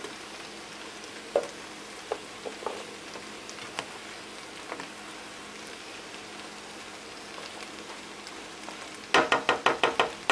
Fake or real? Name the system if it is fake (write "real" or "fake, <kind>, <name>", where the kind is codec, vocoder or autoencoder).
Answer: real